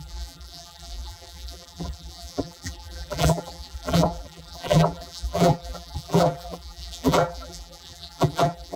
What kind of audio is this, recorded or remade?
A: remade